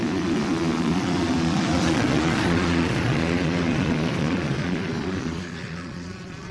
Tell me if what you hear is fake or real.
fake